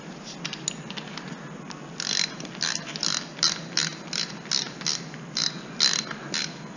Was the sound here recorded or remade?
recorded